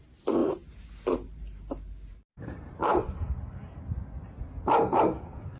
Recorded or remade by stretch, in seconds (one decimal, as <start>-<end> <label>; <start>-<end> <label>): 0.0-0.4 recorded; 0.4-3.8 remade; 3.8-5.6 recorded